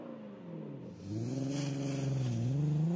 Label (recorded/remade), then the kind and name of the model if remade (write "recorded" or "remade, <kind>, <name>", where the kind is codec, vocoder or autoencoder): recorded